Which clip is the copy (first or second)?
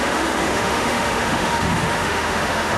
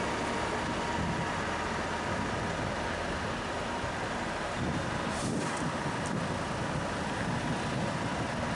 first